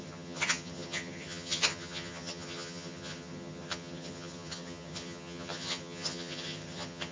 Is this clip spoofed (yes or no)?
yes